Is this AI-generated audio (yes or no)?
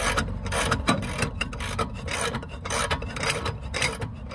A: no